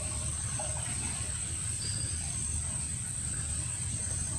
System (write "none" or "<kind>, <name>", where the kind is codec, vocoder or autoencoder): vocoder, BigVGAN v2